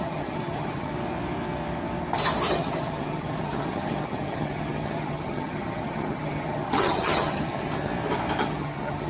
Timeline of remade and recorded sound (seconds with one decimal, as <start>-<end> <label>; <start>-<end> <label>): 0.0-0.9 remade; 0.9-2.5 recorded; 2.5-7.9 remade; 7.9-8.4 recorded; 8.4-9.1 remade